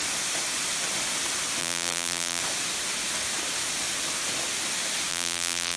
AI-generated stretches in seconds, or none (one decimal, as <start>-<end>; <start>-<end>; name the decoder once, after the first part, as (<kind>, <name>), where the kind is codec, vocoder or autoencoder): 1.6-2.4 (vocoder, BigVGAN v2); 5.1-5.8